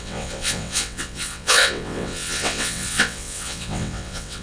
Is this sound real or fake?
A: fake